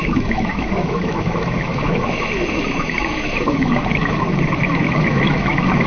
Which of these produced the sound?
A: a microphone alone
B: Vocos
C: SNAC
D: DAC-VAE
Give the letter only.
D